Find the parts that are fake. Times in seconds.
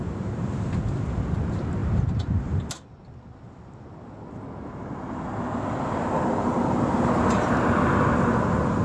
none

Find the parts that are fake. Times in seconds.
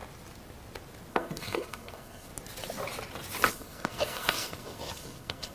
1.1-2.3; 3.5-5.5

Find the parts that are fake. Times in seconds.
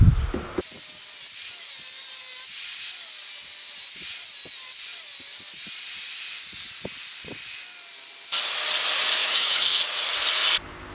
9.2-9.8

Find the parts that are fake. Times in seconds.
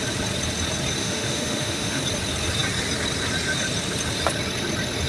1.0-2.0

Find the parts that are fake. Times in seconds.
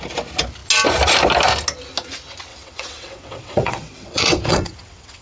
2.5-5.2